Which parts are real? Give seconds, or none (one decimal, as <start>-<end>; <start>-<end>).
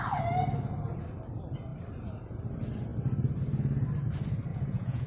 0.0-4.5